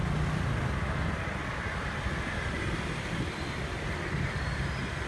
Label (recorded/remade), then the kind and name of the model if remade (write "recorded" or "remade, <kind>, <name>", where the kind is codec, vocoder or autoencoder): recorded